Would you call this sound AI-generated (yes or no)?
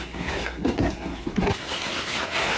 yes